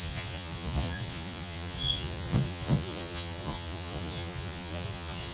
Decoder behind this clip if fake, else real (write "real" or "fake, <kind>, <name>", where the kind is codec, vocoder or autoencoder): fake, vocoder, Vocos